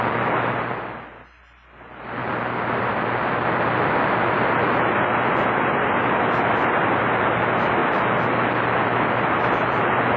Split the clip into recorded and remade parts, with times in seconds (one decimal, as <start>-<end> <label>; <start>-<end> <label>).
0.0-10.2 recorded